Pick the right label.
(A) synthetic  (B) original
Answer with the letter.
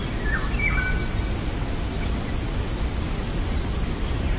B